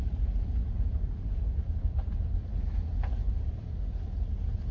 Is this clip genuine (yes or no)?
yes